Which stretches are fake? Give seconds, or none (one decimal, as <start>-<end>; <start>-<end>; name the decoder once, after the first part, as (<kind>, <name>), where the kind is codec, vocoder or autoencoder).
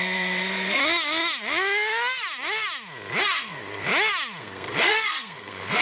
0.0-0.8 (codec, SNAC); 3.2-3.9; 4.4-5.8